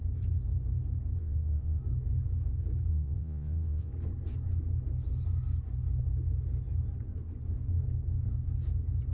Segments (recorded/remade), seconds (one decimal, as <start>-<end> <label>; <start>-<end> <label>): 0.0-1.2 recorded; 1.2-1.8 remade; 1.8-2.9 recorded; 2.9-3.9 remade; 3.9-9.1 recorded